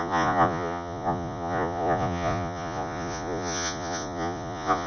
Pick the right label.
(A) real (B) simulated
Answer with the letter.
B